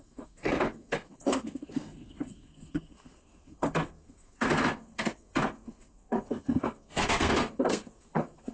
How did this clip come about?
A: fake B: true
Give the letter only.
A